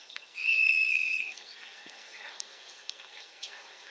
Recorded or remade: remade